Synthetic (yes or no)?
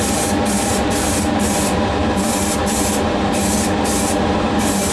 yes